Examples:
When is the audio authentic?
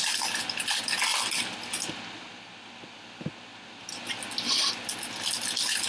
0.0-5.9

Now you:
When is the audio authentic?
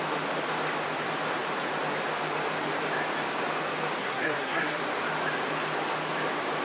0.0-4.0; 4.8-6.6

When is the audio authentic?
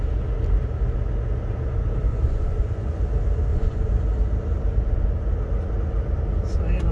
0.0-2.1; 3.0-3.5; 4.0-6.9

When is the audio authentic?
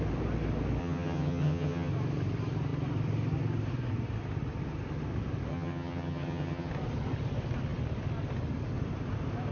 0.0-0.8; 1.9-5.5; 6.7-9.5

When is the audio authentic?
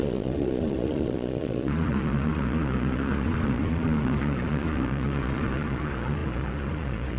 none